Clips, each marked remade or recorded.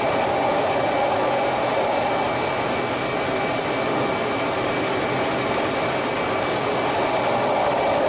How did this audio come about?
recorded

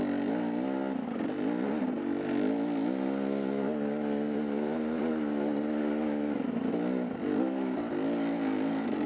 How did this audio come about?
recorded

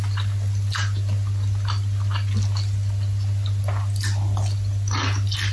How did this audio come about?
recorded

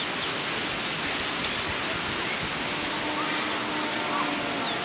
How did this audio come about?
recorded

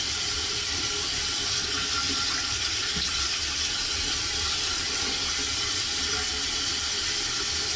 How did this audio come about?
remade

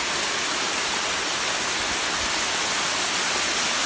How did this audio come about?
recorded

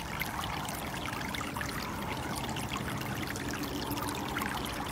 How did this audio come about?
recorded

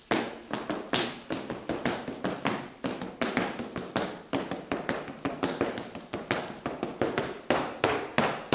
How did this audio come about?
recorded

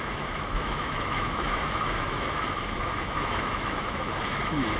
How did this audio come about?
remade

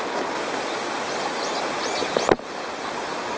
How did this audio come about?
recorded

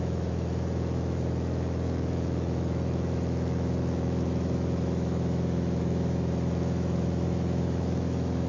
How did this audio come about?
remade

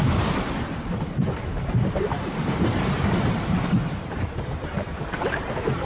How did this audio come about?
remade